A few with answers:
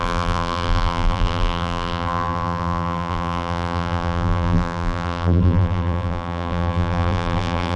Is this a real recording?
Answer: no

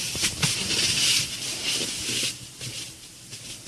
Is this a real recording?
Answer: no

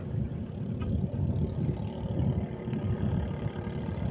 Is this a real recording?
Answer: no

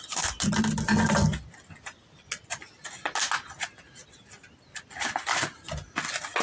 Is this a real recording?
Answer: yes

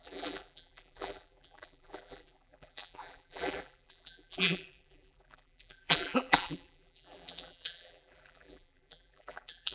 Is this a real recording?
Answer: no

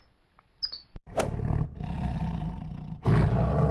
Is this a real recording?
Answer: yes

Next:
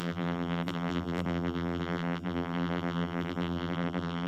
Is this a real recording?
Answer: no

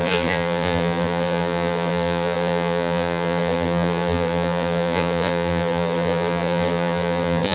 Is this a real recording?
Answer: no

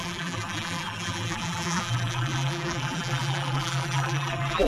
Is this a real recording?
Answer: no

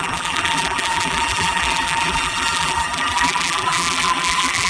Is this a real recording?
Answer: no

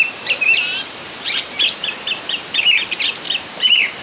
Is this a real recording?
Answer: no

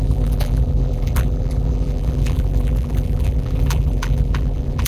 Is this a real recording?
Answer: no